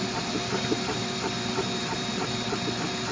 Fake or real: real